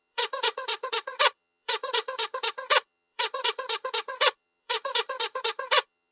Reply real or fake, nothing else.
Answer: fake